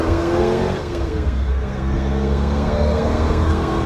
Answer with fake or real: fake